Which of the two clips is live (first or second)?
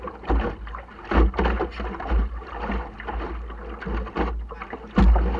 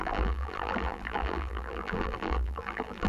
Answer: first